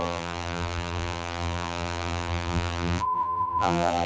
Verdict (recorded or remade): remade